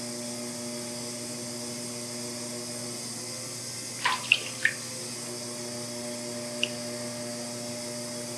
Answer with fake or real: real